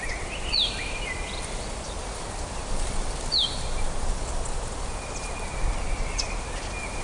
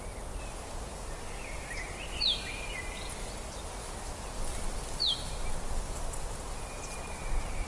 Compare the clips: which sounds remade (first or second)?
first